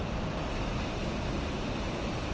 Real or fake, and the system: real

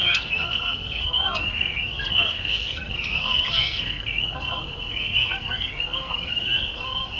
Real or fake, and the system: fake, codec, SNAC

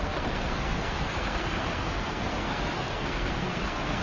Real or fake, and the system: fake, codec, SNAC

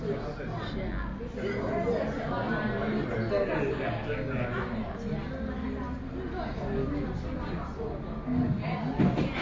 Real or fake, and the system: real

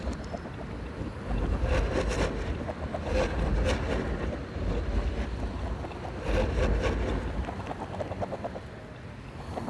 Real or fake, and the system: real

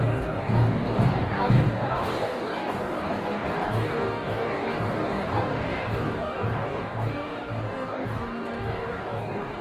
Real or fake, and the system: fake, codec, DAC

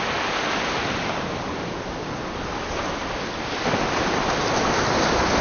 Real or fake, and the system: real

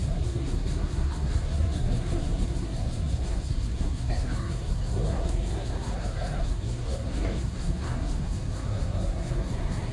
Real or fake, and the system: fake, codec, SNAC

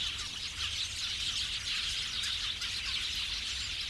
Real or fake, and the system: real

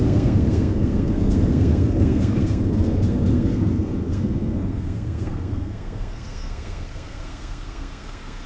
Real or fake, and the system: fake, codec, SNAC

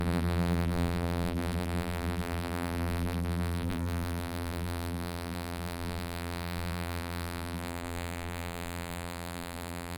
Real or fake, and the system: fake, vocoder, BigVGAN v2